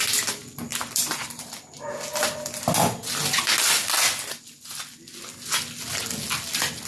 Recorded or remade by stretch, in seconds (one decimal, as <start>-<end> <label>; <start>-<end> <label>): 0.0-0.7 recorded; 0.7-1.5 remade; 1.5-6.9 recorded